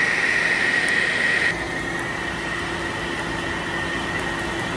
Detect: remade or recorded recorded